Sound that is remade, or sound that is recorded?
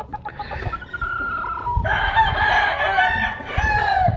recorded